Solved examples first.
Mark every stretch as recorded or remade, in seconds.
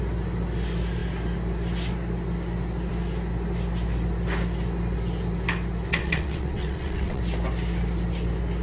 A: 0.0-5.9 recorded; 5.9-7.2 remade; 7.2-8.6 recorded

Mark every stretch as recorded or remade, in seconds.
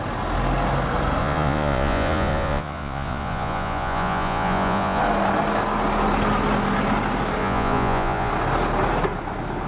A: 0.0-1.2 recorded; 1.2-5.0 remade; 5.0-7.4 recorded; 7.4-8.3 remade; 8.3-9.7 recorded